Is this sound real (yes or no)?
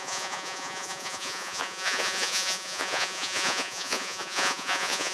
no